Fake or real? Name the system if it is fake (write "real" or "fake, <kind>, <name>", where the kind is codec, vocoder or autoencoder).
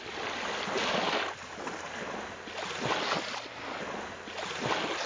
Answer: real